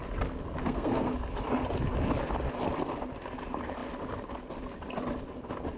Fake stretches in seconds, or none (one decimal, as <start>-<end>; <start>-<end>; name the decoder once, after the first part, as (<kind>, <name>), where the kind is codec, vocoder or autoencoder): 0.6-1.1 (codec, SNAC)